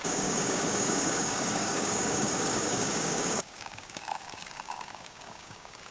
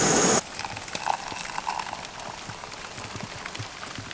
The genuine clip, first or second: second